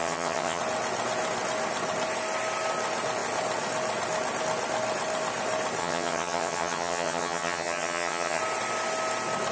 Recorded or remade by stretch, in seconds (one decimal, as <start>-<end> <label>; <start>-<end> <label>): 0.0-0.6 remade; 0.6-5.8 recorded; 5.8-8.4 remade; 8.4-9.5 recorded